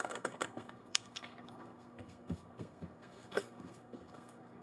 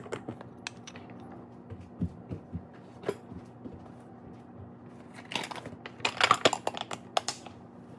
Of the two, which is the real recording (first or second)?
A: second